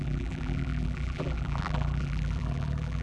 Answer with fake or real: fake